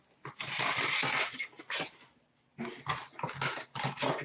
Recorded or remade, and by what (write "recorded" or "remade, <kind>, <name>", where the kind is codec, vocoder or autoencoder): recorded